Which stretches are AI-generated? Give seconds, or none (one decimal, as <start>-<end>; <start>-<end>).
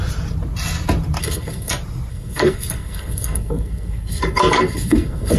1.2-1.7; 2.1-5.4